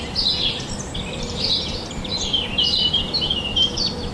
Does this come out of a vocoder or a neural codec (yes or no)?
no